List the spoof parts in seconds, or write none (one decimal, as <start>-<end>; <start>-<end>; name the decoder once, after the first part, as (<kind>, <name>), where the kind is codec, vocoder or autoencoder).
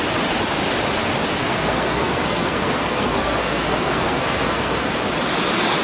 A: 1.4-4.9 (codec, SNAC)